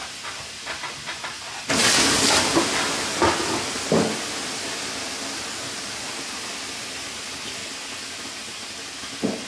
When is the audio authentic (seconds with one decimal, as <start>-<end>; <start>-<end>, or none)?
0.0-9.5

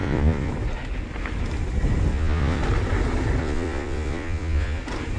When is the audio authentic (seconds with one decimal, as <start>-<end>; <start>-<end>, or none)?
0.5-2.1; 2.6-3.4; 4.8-5.2